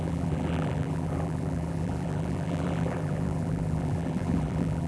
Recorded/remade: remade